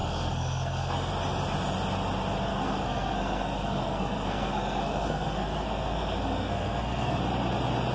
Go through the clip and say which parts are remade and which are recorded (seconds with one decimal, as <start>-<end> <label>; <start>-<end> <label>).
0.0-1.1 remade; 1.1-2.5 recorded; 2.5-7.2 remade; 7.2-7.9 recorded